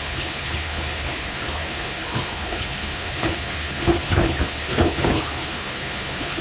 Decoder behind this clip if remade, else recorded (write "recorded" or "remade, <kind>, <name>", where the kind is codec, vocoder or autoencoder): remade, codec, HILCodec